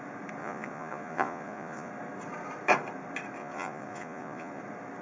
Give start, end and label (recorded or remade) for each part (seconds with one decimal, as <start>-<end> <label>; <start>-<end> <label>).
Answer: 0.0-0.4 recorded; 0.4-1.9 remade; 1.9-3.4 recorded; 3.4-4.6 remade; 4.6-5.0 recorded

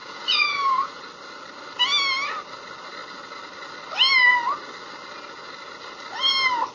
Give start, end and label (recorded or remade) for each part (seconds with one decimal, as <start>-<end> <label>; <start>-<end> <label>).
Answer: 0.0-1.0 remade; 1.0-6.7 recorded

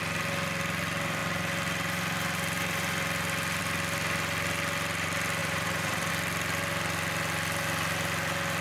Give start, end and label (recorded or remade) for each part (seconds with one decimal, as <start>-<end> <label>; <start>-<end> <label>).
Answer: 0.0-5.4 recorded; 5.4-6.1 remade; 6.1-8.6 recorded

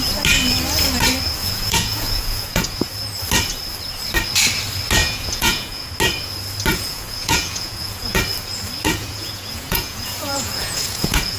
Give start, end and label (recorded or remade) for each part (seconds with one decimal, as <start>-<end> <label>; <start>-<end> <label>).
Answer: 0.0-1.4 recorded; 1.4-2.9 remade; 2.9-5.0 recorded; 5.0-5.9 remade; 5.9-6.7 recorded; 6.7-8.2 remade; 8.2-9.0 recorded; 9.0-11.4 remade

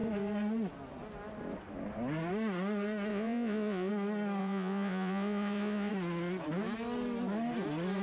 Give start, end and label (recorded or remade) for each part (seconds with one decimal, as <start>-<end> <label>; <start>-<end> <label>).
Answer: 0.0-3.1 recorded; 3.1-3.9 remade; 3.9-4.4 recorded; 4.4-5.9 remade; 5.9-8.0 recorded

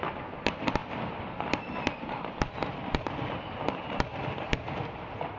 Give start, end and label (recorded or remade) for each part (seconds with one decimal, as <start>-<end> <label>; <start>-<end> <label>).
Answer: 0.0-0.8 recorded; 0.8-3.5 remade; 3.5-5.4 recorded

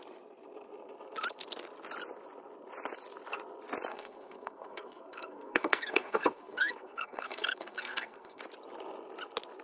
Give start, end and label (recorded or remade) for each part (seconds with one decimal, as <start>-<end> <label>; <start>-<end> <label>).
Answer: 0.0-3.9 recorded; 3.9-8.4 remade; 8.4-9.6 recorded

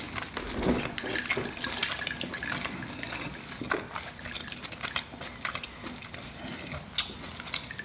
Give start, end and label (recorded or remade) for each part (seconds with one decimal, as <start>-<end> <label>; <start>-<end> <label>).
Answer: 0.0-7.8 recorded